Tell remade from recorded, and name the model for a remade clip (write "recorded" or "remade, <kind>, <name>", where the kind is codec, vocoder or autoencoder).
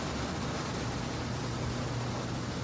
recorded